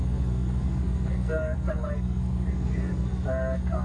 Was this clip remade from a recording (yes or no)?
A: yes